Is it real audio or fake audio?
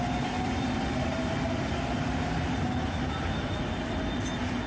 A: real